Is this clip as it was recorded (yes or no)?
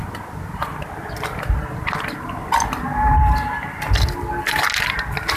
yes